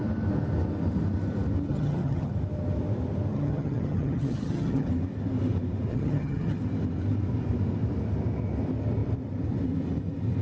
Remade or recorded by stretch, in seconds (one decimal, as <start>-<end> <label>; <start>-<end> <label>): 0.0-1.7 recorded; 1.7-2.3 remade; 2.3-3.3 recorded; 3.3-4.9 remade; 4.9-5.9 recorded; 5.9-6.6 remade; 6.6-10.4 recorded